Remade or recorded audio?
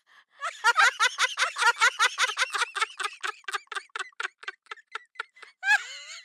recorded